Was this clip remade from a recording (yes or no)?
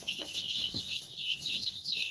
yes